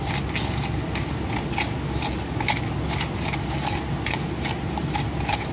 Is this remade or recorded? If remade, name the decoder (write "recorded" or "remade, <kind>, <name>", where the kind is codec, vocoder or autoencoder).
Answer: recorded